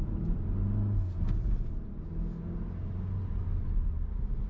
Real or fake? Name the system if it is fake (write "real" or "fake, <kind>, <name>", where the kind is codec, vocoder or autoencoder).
real